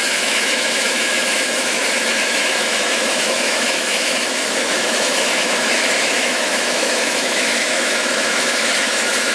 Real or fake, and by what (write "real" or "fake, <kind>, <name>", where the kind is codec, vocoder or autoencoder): fake, autoencoder, DAC-VAE